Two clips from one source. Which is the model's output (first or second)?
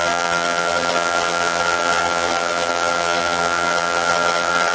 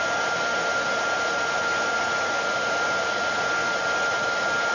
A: first